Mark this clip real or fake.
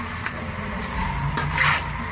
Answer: real